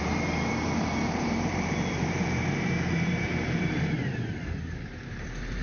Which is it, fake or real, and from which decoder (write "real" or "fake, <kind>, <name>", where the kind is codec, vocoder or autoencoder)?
fake, vocoder, BigVGAN v2